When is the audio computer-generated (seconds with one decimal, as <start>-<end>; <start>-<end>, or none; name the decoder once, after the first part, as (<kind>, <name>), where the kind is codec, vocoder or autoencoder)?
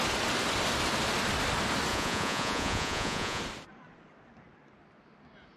1.9-3.4 (vocoder, Vocos)